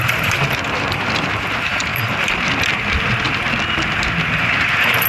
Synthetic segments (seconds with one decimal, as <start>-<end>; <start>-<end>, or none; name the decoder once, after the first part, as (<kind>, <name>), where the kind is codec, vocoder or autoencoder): 0.0-1.9 (vocoder, BigVGAN v2); 4.0-5.1